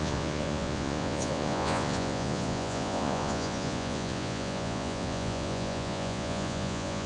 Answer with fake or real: fake